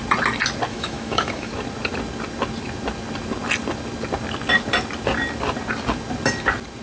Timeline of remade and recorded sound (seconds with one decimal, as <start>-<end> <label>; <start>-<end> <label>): 0.0-0.7 recorded; 0.7-1.5 remade; 1.5-6.8 recorded